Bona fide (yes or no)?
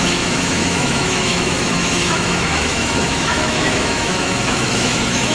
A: no